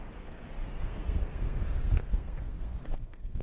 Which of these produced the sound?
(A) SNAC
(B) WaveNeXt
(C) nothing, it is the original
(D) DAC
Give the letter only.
A